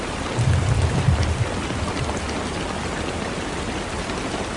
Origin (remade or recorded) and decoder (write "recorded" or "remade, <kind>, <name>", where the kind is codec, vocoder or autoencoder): recorded